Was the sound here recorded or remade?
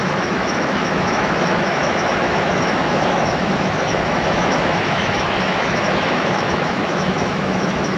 remade